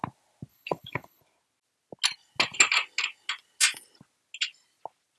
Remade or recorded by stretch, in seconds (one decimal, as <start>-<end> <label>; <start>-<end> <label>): 0.0-0.5 recorded; 0.5-1.2 remade; 1.2-5.2 recorded